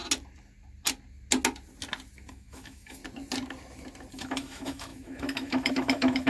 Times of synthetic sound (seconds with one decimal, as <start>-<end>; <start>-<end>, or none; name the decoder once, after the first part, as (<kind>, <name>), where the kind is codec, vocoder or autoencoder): 2.3-3.0 (autoencoder, DAC-VAE); 4.1-6.3